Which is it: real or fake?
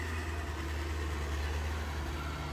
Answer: real